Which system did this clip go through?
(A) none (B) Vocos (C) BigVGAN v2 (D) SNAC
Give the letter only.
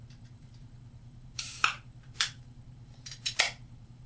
C